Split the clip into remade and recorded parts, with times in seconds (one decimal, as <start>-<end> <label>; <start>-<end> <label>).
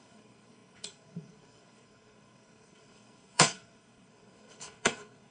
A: 0.0-5.3 remade